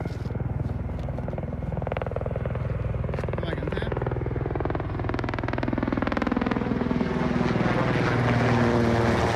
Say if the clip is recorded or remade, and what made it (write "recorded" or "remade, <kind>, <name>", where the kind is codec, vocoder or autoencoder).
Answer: recorded